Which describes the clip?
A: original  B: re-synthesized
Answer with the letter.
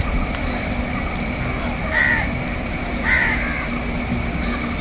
A